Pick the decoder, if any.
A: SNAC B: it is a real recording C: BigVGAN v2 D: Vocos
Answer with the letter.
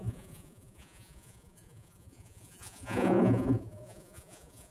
D